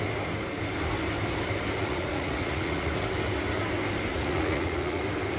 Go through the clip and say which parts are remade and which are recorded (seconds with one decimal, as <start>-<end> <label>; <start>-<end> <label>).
0.0-1.8 recorded; 1.8-2.9 remade; 2.9-4.1 recorded; 4.1-5.0 remade; 5.0-5.4 recorded